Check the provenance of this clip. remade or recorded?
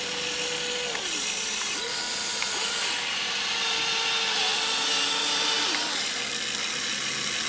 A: recorded